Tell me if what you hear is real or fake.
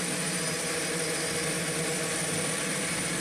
fake